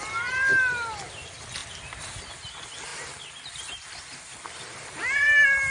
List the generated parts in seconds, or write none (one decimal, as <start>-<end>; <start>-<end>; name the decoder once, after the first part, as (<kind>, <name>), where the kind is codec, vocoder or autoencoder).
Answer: none